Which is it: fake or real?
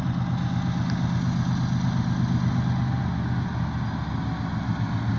real